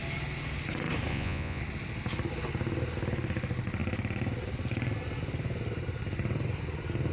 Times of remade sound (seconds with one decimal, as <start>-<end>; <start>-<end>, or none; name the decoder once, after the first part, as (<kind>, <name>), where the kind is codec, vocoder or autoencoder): 1.1-1.6 (vocoder, Vocos)